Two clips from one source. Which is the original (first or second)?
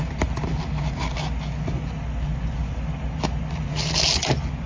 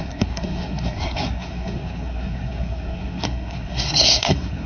first